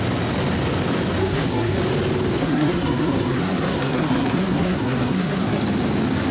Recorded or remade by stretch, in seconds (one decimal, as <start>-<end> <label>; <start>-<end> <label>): 0.0-1.2 recorded; 1.2-1.8 remade; 1.8-2.4 recorded; 2.4-5.6 remade; 5.6-6.3 recorded